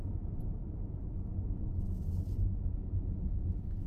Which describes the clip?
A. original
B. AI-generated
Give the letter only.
A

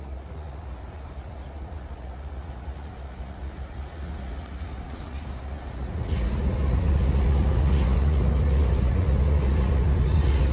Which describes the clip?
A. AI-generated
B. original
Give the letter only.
A